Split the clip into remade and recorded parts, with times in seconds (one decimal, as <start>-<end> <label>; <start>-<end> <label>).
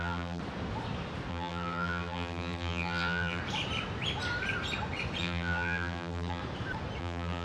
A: 0.0-0.4 remade; 0.4-1.3 recorded; 1.3-3.4 remade; 3.4-5.2 recorded; 5.2-6.4 remade; 6.4-7.0 recorded; 7.0-7.4 remade